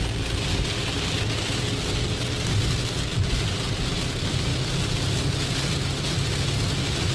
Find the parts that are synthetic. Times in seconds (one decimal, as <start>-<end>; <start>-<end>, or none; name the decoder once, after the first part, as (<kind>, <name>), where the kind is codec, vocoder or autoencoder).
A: none